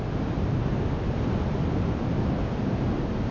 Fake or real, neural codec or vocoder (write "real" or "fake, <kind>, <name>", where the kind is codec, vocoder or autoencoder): real